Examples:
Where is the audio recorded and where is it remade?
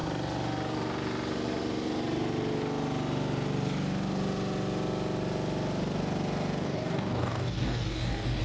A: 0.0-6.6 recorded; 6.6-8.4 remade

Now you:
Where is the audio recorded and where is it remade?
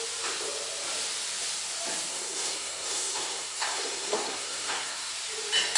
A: 0.0-2.1 recorded; 2.1-5.1 remade; 5.1-5.8 recorded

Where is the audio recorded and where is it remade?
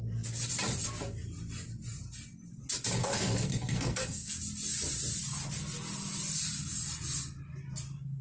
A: 0.0-3.0 recorded; 3.0-4.3 remade; 4.3-8.2 recorded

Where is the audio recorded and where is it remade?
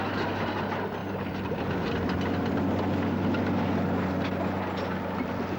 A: 0.0-5.6 recorded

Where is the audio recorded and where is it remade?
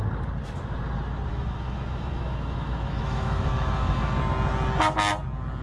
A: 0.0-1.3 recorded; 1.3-4.2 remade; 4.2-5.6 recorded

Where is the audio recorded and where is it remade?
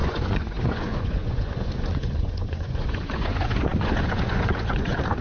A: 0.0-5.2 remade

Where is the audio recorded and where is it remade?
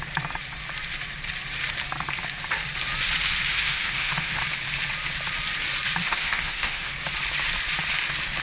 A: 0.0-3.5 recorded; 3.5-4.4 remade; 4.4-6.0 recorded; 6.0-6.9 remade; 6.9-8.4 recorded